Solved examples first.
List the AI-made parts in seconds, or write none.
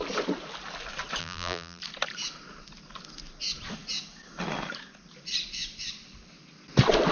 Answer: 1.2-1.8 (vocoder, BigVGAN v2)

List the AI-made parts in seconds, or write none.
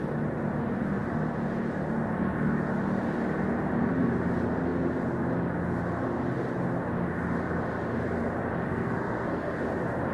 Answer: 8.7-9.6 (codec, SNAC)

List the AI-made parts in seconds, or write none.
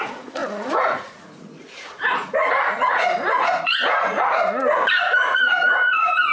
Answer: 0.0-6.3 (vocoder, Vocos)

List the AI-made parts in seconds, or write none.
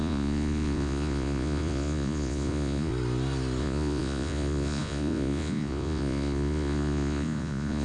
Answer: 0.0-2.9 (vocoder, Vocos); 3.6-7.8